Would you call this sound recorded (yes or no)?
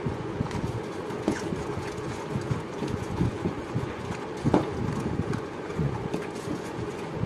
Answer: no